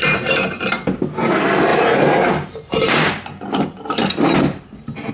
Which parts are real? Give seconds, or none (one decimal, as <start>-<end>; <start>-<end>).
0.0-1.7